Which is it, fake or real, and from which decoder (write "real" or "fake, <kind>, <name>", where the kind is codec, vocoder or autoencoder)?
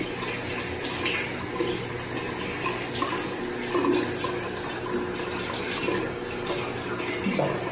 real